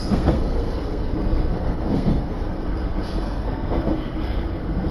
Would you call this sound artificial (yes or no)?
yes